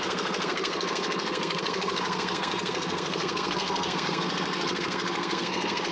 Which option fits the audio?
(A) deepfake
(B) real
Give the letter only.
A